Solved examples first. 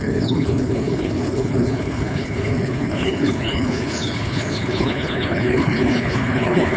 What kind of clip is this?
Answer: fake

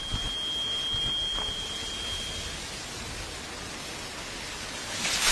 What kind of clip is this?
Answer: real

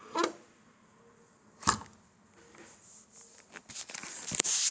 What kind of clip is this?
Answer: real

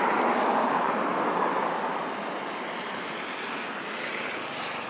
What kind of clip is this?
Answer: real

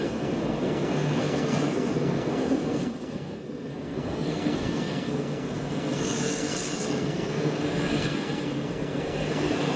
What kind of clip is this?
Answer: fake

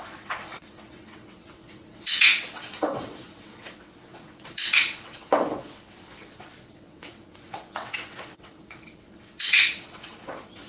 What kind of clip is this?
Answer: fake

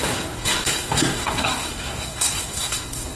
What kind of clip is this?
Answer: fake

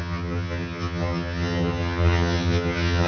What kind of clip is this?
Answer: fake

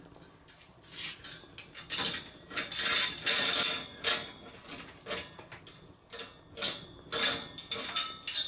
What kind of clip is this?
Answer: real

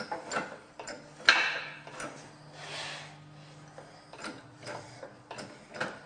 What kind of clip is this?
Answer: real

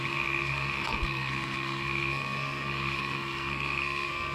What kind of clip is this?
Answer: fake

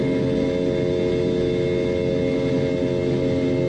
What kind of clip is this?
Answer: real